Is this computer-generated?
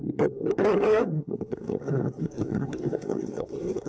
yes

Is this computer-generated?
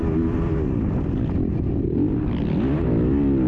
no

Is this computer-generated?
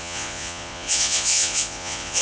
yes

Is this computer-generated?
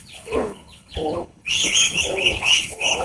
yes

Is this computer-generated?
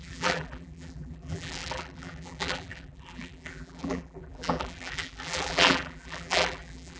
yes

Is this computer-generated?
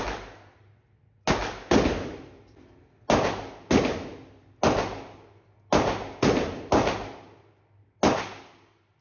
no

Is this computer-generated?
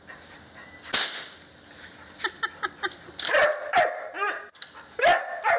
no